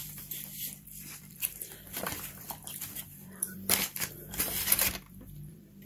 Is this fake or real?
fake